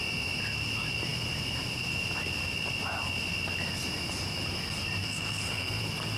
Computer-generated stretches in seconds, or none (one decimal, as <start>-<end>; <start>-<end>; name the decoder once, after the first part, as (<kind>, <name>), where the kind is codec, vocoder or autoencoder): 5.0-5.8 (codec, SNAC)